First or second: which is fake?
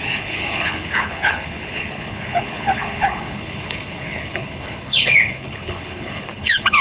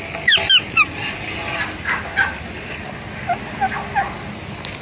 first